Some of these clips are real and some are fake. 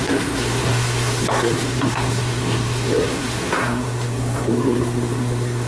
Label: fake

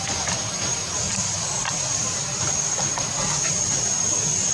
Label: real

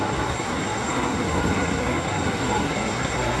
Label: fake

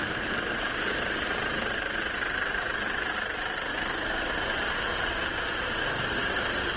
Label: real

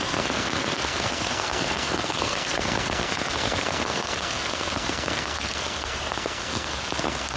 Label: fake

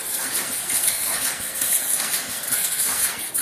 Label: fake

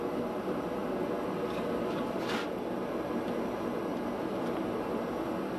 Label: real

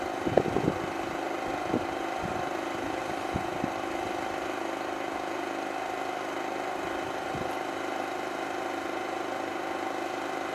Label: real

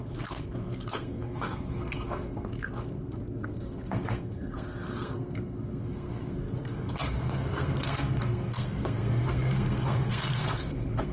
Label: fake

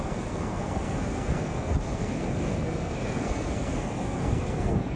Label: fake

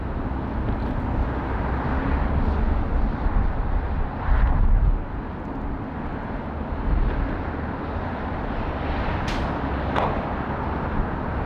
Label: real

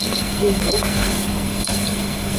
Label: fake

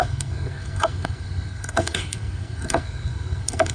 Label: fake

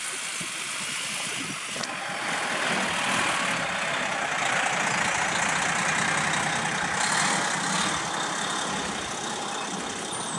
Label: real